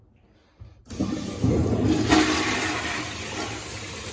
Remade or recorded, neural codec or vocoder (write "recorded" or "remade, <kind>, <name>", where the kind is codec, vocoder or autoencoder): recorded